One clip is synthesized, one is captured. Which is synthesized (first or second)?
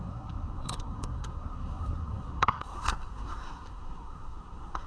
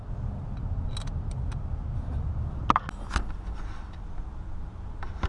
first